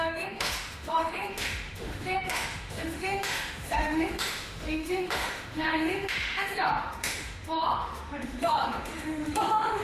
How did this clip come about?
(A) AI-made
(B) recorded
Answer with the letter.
A